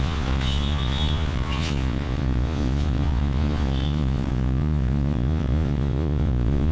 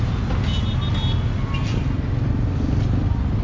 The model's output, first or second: first